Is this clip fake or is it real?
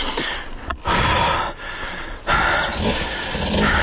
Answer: real